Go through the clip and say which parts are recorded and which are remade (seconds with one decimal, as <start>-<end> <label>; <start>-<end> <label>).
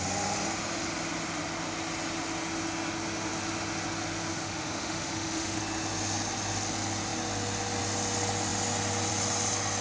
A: 0.0-4.3 recorded; 4.3-5.6 remade; 5.6-9.8 recorded